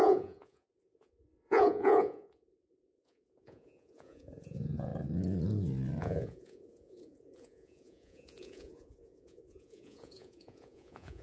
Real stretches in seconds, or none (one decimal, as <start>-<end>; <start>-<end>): 4.9-6.0